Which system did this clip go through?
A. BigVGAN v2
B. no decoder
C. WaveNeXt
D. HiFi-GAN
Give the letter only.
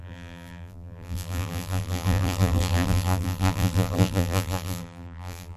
A